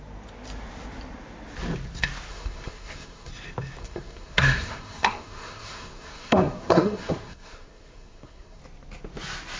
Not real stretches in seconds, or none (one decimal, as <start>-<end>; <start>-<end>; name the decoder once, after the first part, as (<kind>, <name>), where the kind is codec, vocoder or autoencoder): 2.3-3.3 (codec, SNAC); 3.8-8.6